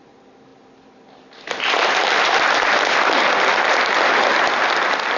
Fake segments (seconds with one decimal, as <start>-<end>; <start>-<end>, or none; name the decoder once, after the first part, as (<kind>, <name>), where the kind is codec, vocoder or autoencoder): 0.5-3.6 (vocoder, BigVGAN v2); 4.3-5.2